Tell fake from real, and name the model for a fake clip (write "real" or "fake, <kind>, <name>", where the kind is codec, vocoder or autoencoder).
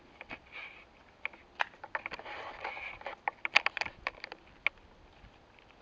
real